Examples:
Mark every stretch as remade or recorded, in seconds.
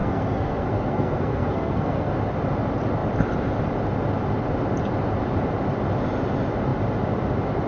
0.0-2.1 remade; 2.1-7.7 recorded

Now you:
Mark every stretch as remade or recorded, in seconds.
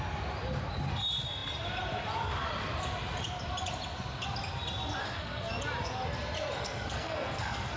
0.0-5.0 recorded; 5.0-5.5 remade; 5.5-6.6 recorded; 6.6-7.8 remade